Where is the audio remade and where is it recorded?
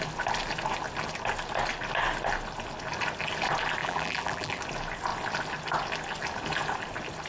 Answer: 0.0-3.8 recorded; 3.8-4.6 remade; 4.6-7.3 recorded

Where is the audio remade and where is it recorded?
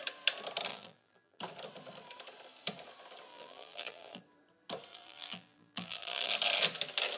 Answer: 0.0-0.7 recorded; 0.7-1.4 remade; 1.4-3.3 recorded; 3.3-4.2 remade; 4.2-4.9 recorded; 4.9-6.3 remade; 6.3-7.2 recorded